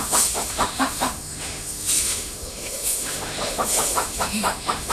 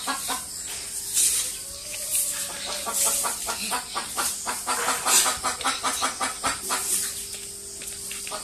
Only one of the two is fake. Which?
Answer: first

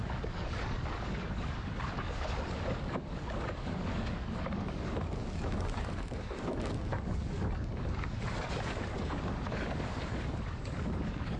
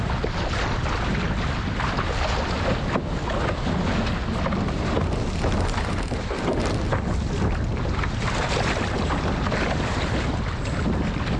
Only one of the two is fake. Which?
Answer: first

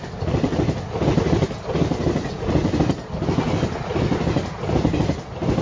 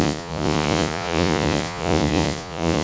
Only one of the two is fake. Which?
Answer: second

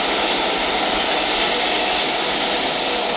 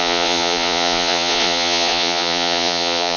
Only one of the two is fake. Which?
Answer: second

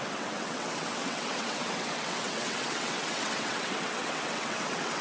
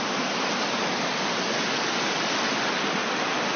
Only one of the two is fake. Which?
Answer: first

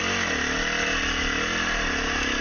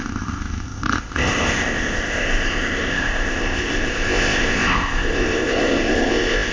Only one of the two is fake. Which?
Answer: second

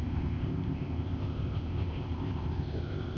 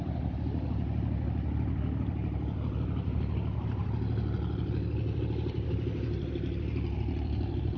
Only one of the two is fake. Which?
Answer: first